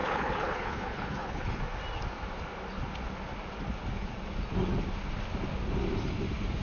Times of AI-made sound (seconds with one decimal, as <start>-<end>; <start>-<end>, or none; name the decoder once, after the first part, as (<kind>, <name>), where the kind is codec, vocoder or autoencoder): 0.0-1.6 (codec, HILCodec)